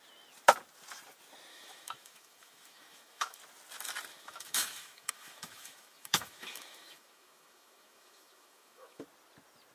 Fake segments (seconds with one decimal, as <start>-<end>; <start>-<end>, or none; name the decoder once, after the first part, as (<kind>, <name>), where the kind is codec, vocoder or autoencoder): 1.5-3.4 (autoencoder, DAC-VAE); 4.1-9.0